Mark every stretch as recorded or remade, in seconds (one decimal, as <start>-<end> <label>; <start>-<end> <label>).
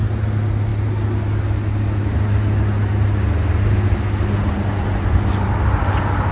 0.0-6.3 recorded